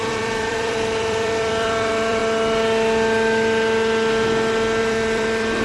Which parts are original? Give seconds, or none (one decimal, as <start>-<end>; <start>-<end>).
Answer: 2.2-4.8